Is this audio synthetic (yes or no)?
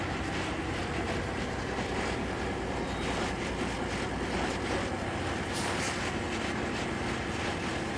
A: no